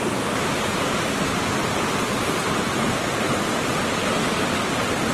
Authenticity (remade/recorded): recorded